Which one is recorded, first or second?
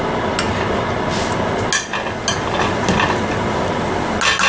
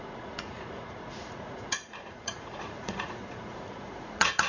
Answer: first